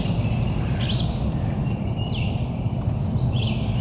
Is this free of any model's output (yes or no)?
yes